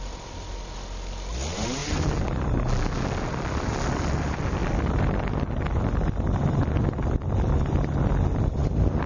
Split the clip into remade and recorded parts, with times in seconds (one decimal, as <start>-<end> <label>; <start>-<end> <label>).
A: 0.0-1.8 remade; 1.8-3.3 recorded; 3.3-9.1 remade